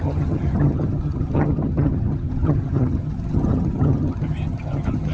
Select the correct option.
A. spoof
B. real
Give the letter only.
A